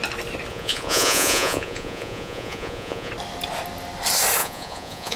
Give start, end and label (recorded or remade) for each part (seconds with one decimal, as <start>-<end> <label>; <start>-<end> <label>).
0.0-0.5 recorded; 0.5-3.1 remade; 3.1-4.4 recorded; 4.4-5.2 remade